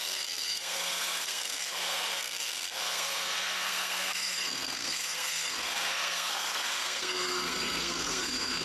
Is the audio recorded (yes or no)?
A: no